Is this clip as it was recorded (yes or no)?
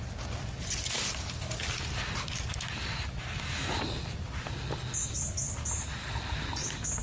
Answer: yes